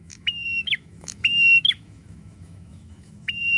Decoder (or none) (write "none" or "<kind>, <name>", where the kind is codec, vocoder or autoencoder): autoencoder, DAC-VAE